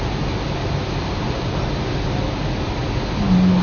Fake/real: real